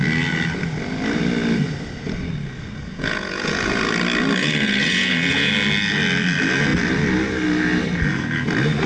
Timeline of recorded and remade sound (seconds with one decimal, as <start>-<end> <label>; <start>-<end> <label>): 0.0-2.9 recorded; 2.9-3.8 remade; 3.8-4.4 recorded; 4.4-5.5 remade; 5.5-8.9 recorded